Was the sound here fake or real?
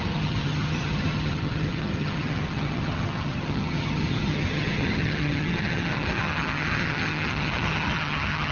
fake